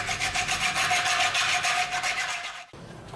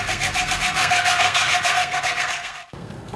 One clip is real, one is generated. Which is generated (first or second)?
second